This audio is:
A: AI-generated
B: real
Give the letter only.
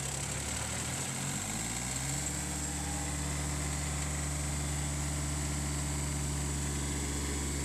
B